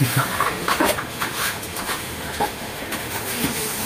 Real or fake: fake